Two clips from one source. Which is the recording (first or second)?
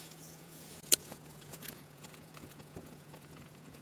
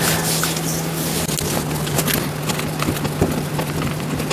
second